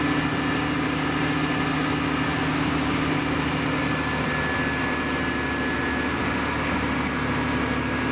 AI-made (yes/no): no